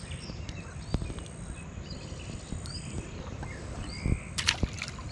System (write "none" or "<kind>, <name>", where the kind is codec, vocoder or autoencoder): none